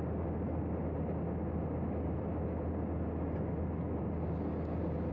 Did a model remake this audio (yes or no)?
no